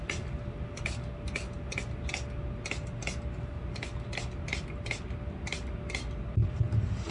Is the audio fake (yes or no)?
no